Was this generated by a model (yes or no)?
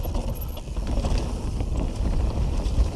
no